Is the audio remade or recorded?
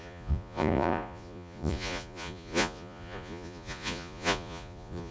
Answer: remade